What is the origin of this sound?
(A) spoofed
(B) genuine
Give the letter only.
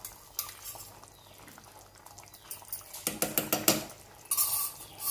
B